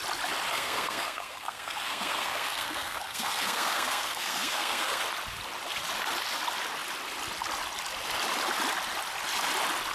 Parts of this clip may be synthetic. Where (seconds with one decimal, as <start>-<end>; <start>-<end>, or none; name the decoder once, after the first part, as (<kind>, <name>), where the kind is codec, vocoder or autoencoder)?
0.5-5.0 (codec, SNAC)